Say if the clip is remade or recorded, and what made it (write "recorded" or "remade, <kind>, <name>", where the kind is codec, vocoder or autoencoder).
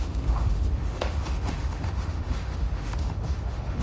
remade, autoencoder, DAC-VAE